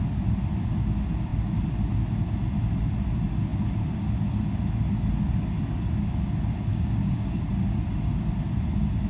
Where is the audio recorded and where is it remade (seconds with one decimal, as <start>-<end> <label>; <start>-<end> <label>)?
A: 0.0-6.7 recorded; 6.7-7.4 remade; 7.4-9.1 recorded